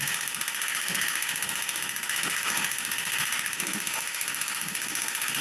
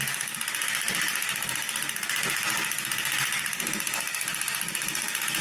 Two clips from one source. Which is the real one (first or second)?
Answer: second